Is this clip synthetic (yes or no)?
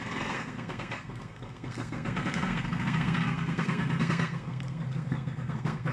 yes